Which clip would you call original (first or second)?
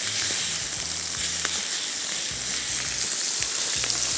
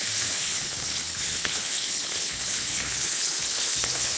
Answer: first